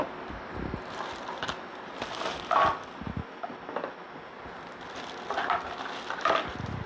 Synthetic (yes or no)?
no